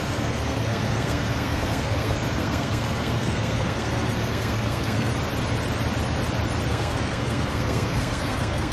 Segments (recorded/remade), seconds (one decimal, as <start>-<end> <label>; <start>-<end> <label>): 0.0-5.1 remade; 5.1-6.7 recorded; 6.7-8.7 remade